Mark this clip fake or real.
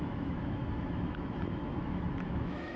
fake